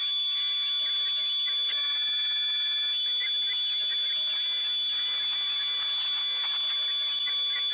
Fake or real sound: real